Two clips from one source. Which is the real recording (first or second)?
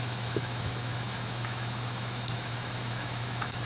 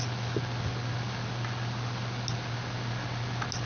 second